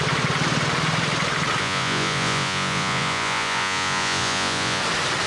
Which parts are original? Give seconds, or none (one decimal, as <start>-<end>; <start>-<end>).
0.0-1.6; 4.8-5.3

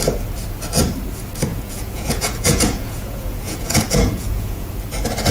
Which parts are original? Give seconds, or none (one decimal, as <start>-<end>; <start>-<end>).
0.0-1.5; 4.7-5.3